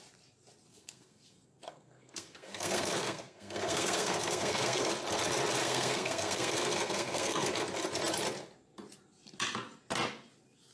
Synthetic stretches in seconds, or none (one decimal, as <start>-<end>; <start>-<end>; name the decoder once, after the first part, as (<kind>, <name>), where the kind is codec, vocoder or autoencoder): 0.7-4.9 (codec, SNAC); 5.6-7.5